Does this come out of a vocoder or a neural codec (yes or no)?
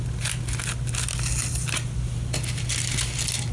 no